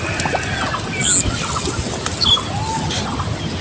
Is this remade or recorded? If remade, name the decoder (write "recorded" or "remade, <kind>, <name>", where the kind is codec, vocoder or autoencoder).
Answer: recorded